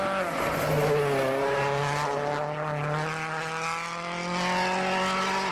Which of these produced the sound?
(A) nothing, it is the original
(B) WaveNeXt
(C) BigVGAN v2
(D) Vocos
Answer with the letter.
A